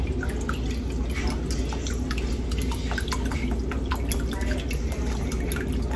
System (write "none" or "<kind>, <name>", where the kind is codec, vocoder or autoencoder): none